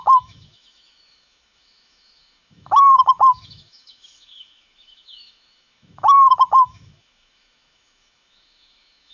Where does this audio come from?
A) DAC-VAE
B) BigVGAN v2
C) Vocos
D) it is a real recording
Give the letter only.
A